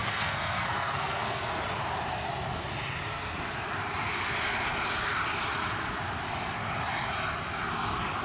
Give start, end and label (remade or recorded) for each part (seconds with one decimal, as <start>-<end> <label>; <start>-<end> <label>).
0.0-1.6 remade; 1.6-8.2 recorded